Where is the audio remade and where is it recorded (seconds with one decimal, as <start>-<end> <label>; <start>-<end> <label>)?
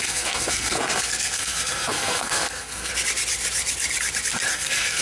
0.0-2.9 remade; 2.9-4.5 recorded; 4.5-5.0 remade